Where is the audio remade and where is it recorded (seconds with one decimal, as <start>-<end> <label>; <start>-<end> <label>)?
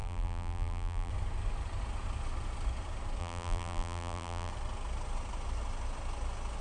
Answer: 0.0-1.1 remade; 1.1-3.2 recorded; 3.2-4.5 remade; 4.5-6.6 recorded